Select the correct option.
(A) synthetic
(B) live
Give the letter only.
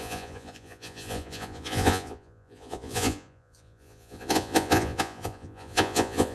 A